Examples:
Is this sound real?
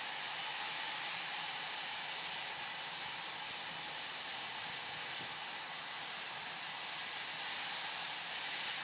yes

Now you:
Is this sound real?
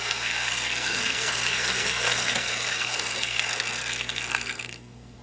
no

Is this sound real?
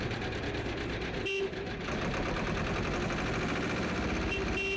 no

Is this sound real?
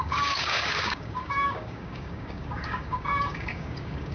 no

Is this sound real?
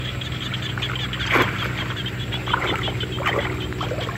yes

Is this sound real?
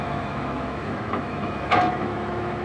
no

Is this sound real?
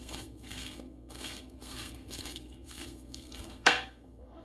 no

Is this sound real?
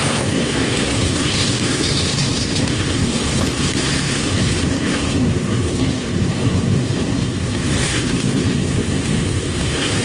no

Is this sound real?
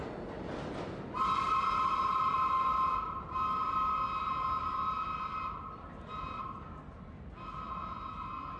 yes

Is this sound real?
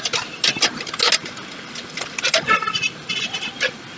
yes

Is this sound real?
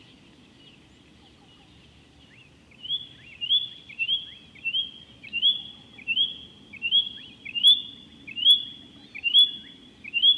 yes